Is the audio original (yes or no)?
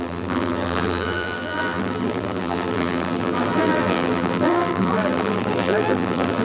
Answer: no